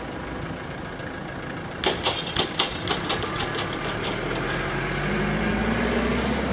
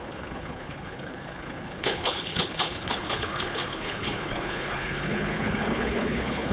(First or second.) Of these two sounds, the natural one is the first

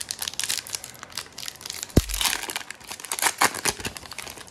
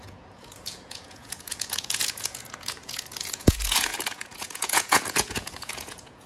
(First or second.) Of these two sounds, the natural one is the first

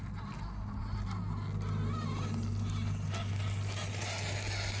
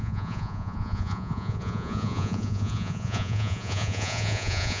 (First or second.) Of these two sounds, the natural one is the first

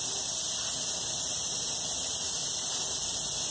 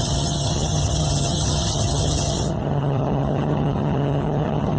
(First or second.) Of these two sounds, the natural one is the first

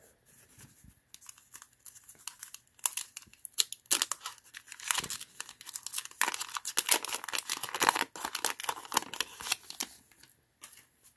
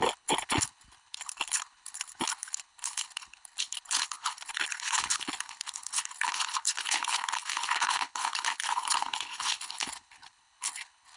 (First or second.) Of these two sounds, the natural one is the first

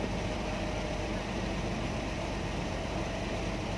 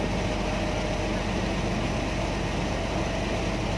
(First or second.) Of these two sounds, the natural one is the second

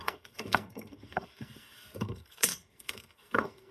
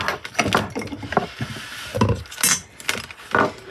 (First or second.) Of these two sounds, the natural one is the second